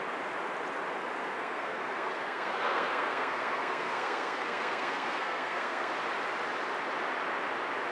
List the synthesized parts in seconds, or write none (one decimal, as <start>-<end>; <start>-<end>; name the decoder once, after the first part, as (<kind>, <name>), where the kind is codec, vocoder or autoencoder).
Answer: 1.2-5.9 (codec, SNAC)